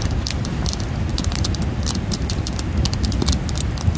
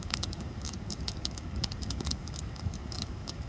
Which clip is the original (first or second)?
first